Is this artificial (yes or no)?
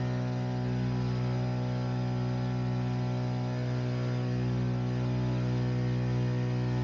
no